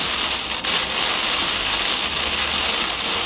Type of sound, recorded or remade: recorded